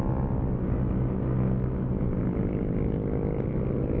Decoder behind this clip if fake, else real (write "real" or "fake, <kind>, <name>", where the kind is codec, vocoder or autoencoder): real